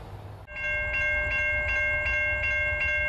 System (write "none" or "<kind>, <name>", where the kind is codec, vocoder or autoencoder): none